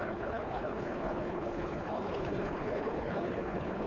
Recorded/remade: remade